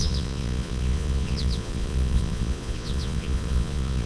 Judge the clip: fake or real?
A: fake